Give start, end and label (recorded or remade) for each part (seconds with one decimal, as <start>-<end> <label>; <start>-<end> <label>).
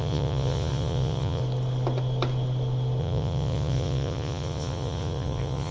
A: 0.0-1.4 remade; 1.4-3.0 recorded; 3.0-5.7 remade